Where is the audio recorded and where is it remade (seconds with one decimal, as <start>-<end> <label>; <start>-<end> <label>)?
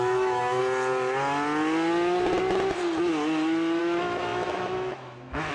0.0-0.6 remade; 0.6-3.8 recorded; 3.8-5.5 remade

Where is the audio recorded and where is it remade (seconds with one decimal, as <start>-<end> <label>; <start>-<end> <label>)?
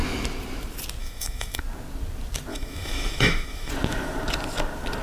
0.0-1.0 recorded; 1.0-1.6 remade; 1.6-2.5 recorded; 2.5-3.7 remade; 3.7-5.0 recorded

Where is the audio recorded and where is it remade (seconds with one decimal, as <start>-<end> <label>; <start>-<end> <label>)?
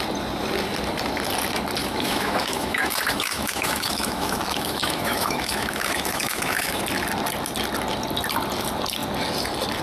0.0-1.8 recorded; 1.8-6.8 remade; 6.8-9.8 recorded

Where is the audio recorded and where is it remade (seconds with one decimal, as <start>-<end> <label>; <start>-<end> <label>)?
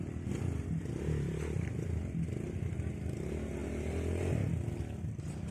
0.0-5.5 recorded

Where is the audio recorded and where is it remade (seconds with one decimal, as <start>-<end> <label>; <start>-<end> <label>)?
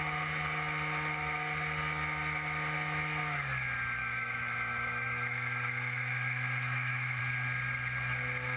0.0-4.0 recorded; 4.0-7.2 remade; 7.2-8.6 recorded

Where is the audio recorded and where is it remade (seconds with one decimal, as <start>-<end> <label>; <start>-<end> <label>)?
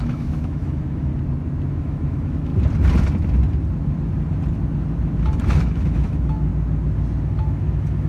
0.0-1.1 remade; 1.1-1.7 recorded; 1.7-2.5 remade; 2.5-5.5 recorded; 5.5-6.5 remade; 6.5-7.3 recorded; 7.3-8.1 remade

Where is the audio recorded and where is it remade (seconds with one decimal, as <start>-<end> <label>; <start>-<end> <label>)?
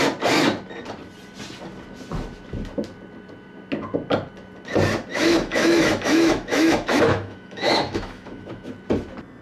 0.0-5.1 recorded; 5.1-8.7 remade; 8.7-9.4 recorded